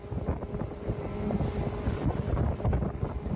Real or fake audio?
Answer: real